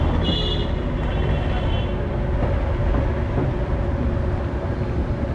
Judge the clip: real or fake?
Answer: real